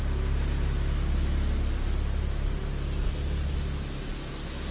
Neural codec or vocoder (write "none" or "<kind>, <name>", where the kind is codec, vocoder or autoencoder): none